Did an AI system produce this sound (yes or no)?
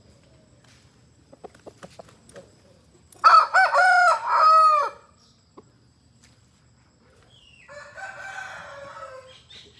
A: no